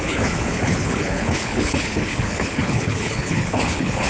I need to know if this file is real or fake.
fake